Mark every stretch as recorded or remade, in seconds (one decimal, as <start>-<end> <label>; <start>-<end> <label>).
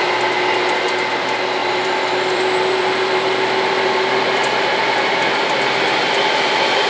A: 0.0-1.6 recorded; 1.6-5.1 remade; 5.1-6.9 recorded